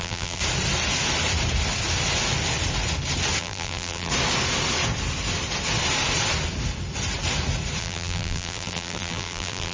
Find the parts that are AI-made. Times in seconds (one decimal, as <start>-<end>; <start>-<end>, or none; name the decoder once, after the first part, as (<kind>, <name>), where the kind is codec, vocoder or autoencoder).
0.0-0.4 (vocoder, BigVGAN v2); 3.4-4.1; 7.8-9.7